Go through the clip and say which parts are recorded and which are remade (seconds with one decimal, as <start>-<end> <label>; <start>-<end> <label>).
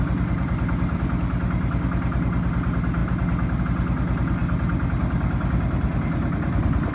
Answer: 0.0-3.0 remade; 3.0-3.6 recorded; 3.6-4.4 remade; 4.4-5.5 recorded; 5.5-6.9 remade